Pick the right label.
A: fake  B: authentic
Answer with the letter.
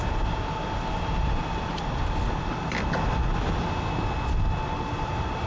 B